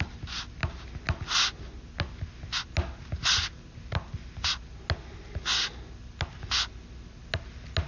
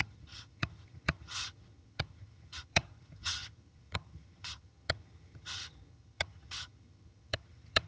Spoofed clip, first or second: second